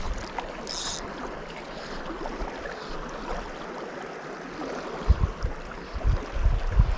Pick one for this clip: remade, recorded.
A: recorded